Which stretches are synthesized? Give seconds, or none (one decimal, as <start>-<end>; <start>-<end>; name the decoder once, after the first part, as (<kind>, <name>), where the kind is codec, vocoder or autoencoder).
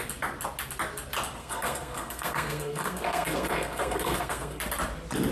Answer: 1.4-4.6 (codec, SNAC)